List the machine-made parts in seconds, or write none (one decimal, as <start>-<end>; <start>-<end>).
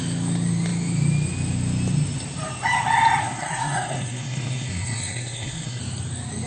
3.2-5.8